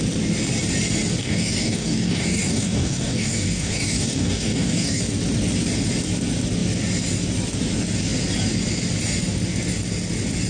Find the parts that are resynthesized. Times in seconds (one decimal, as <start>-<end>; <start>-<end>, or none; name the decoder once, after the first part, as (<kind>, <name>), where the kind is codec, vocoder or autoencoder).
1.2-5.0 (codec, DAC)